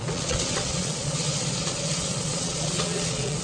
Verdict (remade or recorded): remade